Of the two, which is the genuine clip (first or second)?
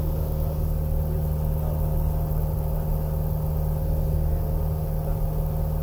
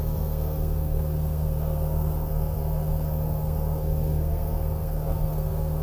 first